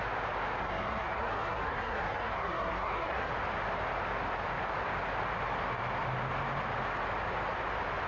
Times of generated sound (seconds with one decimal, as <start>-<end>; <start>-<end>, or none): 0.6-3.3